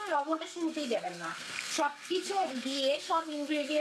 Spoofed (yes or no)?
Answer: yes